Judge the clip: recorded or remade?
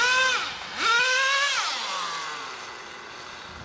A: recorded